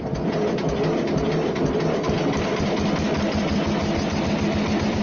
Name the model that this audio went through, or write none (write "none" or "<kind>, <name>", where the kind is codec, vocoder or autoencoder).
none